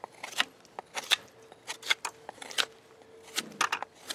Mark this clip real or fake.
real